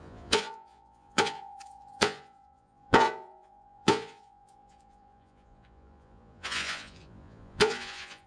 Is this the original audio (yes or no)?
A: no